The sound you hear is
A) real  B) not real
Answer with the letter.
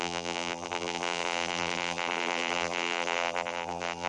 B